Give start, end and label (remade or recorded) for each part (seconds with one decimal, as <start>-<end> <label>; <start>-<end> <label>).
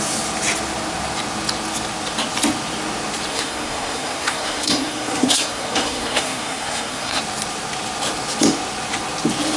0.0-3.3 recorded; 3.3-7.2 remade; 7.2-9.6 recorded